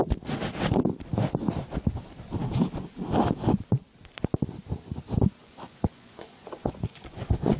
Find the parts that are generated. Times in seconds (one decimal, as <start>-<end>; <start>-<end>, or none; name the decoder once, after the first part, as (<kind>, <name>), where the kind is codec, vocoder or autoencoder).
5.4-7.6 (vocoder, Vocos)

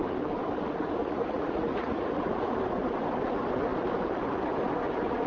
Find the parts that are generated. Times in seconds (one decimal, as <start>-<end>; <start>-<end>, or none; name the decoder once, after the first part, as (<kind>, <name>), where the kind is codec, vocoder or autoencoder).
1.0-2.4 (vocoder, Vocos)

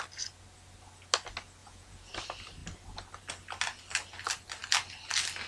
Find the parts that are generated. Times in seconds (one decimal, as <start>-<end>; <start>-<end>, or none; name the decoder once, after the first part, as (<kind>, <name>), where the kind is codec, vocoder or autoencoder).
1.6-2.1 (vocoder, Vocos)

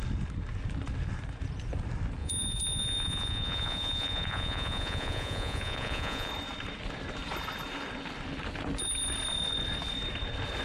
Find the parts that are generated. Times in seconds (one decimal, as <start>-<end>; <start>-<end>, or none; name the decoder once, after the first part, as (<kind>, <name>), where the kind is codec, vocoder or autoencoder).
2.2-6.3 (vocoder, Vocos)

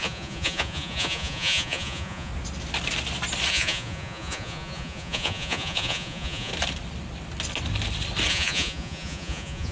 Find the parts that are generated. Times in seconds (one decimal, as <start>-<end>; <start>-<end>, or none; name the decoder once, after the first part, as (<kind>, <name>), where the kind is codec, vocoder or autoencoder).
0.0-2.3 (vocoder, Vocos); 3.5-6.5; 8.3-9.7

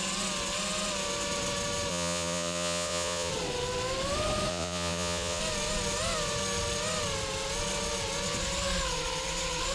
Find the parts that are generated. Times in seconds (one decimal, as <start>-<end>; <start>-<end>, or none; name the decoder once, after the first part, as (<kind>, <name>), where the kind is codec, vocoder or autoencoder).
1.9-3.3 (vocoder, Vocos); 4.5-5.4